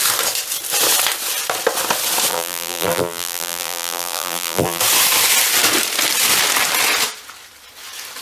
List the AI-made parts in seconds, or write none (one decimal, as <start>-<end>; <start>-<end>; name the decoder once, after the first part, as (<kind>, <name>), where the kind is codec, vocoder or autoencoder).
2.3-4.8 (vocoder, BigVGAN v2)